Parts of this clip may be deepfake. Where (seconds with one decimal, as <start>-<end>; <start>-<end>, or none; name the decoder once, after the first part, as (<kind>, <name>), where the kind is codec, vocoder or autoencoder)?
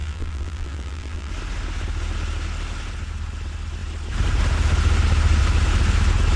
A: 0.0-1.3 (vocoder, BigVGAN v2)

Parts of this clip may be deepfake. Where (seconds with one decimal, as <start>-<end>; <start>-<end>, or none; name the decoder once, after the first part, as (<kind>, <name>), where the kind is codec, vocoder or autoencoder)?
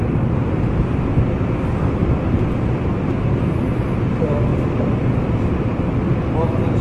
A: none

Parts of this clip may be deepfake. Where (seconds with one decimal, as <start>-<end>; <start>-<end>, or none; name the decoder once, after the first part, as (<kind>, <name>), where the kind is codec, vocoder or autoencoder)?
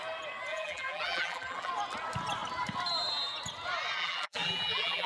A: 0.5-1.7 (vocoder, BigVGAN v2); 4.0-5.1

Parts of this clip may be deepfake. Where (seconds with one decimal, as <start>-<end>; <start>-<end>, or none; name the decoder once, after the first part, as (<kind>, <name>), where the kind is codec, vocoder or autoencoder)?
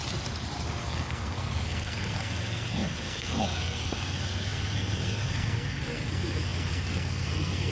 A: 0.8-7.7 (codec, SNAC)